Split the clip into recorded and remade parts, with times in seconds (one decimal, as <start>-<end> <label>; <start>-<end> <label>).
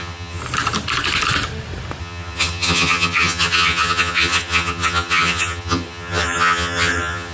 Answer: 0.0-0.4 remade; 0.4-2.0 recorded; 2.0-7.3 remade